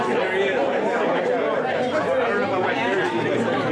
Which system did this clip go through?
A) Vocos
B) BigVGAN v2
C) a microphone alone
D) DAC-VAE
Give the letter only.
C